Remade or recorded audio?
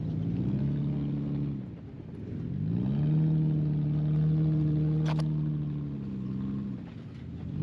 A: recorded